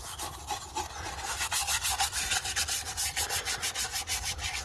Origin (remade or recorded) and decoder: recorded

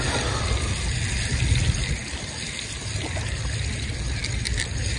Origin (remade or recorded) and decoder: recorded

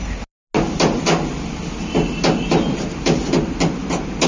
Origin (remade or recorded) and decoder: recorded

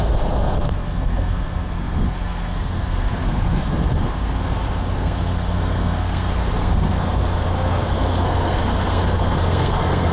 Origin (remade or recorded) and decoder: remade, codec, SNAC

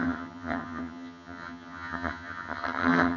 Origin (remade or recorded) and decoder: remade, vocoder, HiFi-GAN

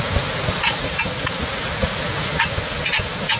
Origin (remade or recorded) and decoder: recorded